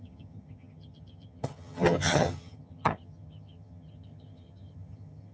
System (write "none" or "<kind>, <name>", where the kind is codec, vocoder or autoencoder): vocoder, HiFi-GAN